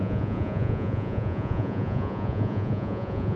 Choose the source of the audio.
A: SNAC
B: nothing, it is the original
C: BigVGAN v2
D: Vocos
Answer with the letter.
D